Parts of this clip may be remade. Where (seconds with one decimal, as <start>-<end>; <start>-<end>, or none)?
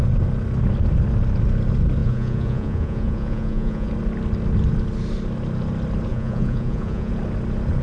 2.0-3.9; 6.1-7.1